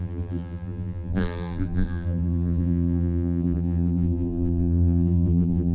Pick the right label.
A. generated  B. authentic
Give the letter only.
A